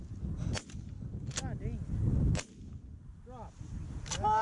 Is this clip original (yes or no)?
yes